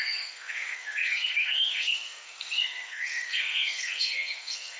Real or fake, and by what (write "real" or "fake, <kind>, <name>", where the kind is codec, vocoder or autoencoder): fake, codec, SNAC